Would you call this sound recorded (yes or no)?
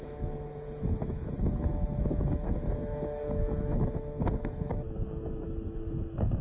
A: no